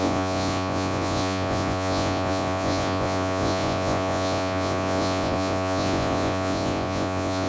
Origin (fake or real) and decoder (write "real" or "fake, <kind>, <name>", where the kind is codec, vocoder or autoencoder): fake, vocoder, Vocos